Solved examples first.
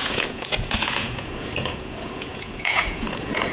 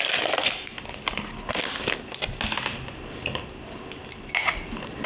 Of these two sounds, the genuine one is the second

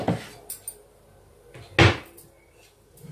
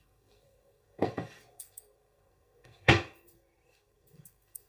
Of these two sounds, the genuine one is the first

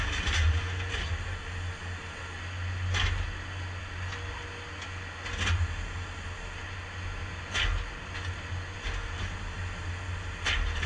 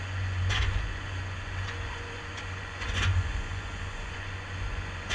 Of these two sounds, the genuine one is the first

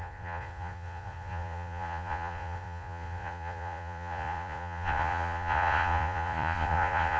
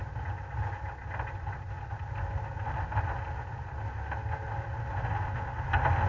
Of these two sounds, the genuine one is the second